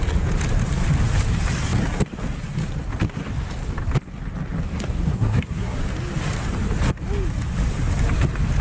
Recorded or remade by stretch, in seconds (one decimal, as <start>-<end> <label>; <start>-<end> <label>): 0.0-4.7 recorded; 4.7-5.8 remade; 5.8-8.6 recorded